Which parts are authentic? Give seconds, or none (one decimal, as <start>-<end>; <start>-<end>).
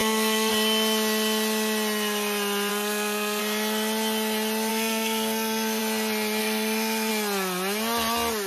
0.5-2.7; 3.4-4.7; 5.8-6.4; 7.1-8.5